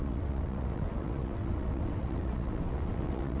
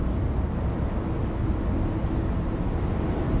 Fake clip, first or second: first